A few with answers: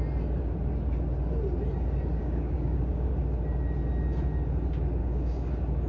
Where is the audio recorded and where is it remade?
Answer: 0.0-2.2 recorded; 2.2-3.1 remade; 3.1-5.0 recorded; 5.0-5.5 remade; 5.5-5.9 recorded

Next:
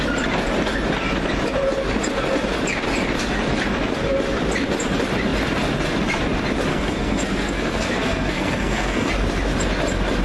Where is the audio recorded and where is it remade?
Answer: 0.0-6.7 recorded; 6.7-9.1 remade; 9.1-10.2 recorded

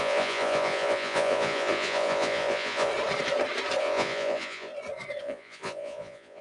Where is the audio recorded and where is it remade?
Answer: 0.0-2.9 remade; 2.9-3.8 recorded; 3.8-4.7 remade; 4.7-5.2 recorded; 5.2-6.4 remade

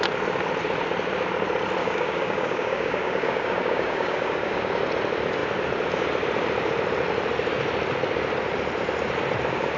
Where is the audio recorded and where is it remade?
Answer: 0.0-1.8 recorded; 1.8-4.7 remade; 4.7-9.8 recorded